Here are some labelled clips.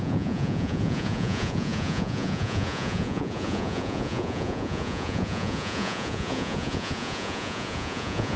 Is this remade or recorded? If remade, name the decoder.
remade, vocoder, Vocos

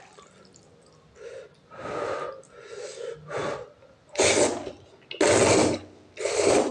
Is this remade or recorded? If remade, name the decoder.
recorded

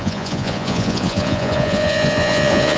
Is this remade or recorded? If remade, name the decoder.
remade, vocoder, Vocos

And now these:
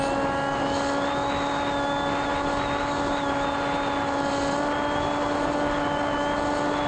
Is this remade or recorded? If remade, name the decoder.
recorded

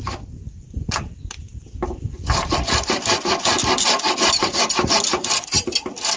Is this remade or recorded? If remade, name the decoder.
recorded